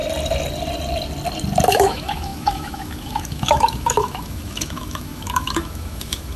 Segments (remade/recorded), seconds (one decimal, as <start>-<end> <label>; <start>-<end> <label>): 0.0-1.7 recorded; 1.7-6.4 remade